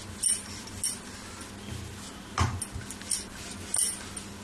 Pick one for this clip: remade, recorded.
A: recorded